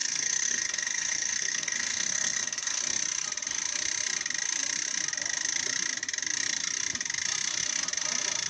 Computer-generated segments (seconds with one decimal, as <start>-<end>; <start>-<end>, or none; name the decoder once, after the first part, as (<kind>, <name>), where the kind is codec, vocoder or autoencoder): 0.0-2.8 (codec, SNAC)